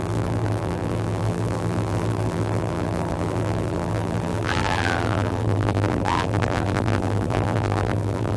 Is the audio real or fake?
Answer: fake